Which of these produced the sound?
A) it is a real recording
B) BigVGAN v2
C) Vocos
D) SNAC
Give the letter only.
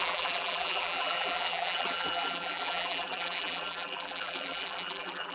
B